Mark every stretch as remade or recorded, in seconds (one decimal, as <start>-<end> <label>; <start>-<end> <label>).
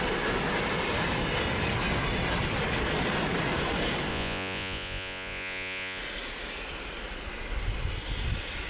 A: 0.0-4.1 recorded; 4.1-6.0 remade; 6.0-8.7 recorded